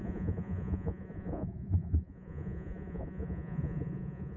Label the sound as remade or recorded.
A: remade